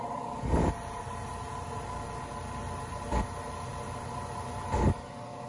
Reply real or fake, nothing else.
real